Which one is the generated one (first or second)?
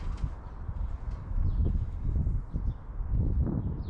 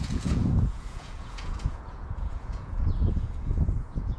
second